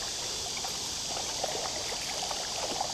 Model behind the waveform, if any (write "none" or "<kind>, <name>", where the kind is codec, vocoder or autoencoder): vocoder, BigVGAN v2